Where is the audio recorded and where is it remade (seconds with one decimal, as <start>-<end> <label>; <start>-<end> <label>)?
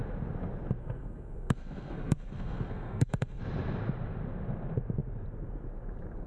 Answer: 0.0-0.8 recorded; 0.8-3.4 remade; 3.4-6.3 recorded